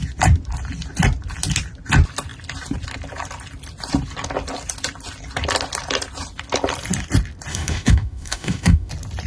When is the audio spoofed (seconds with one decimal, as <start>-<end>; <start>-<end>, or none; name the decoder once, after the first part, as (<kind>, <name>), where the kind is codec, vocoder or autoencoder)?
7.5-8.9 (autoencoder, DAC-VAE)